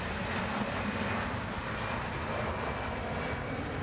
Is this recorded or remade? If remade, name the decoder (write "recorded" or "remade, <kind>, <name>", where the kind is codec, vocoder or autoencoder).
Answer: recorded